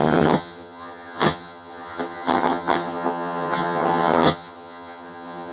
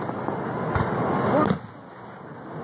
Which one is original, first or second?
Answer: second